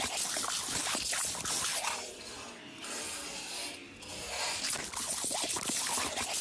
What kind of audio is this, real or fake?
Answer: real